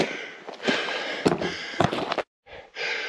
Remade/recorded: recorded